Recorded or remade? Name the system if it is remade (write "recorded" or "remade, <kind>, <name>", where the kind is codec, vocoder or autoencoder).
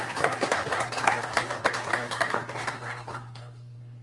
remade, codec, SNAC